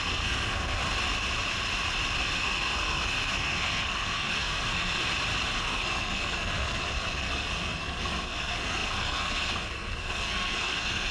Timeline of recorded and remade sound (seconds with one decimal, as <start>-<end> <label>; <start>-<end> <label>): 0.0-0.8 remade; 0.8-2.2 recorded; 2.2-5.0 remade; 5.0-5.6 recorded; 5.6-11.1 remade